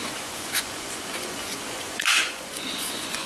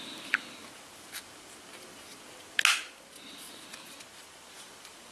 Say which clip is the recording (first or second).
second